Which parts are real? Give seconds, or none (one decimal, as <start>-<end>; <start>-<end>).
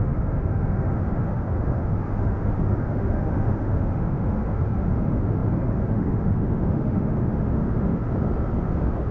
8.0-8.6